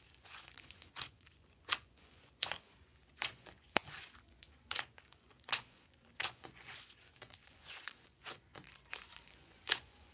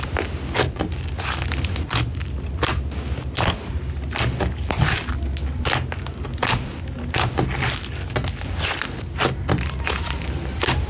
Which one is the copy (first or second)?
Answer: first